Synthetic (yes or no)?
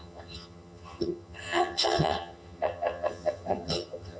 yes